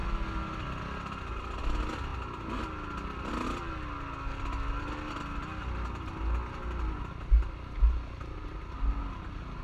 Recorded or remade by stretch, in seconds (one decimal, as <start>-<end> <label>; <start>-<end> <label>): 0.0-9.6 recorded